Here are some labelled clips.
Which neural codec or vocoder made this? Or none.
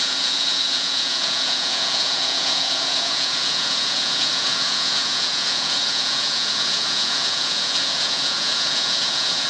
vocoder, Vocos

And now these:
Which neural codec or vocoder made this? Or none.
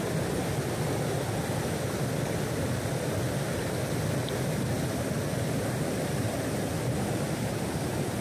none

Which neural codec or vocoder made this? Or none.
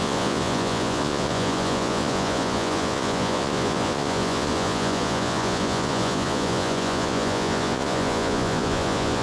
vocoder, Vocos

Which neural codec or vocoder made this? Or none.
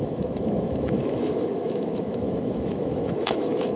autoencoder, DAC-VAE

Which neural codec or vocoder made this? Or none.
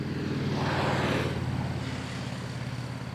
none